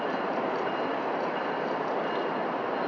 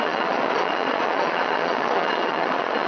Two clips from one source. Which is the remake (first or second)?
second